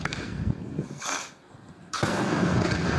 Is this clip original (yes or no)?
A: no